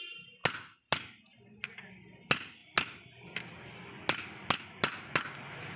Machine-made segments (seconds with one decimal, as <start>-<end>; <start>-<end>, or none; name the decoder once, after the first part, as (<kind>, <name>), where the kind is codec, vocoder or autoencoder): none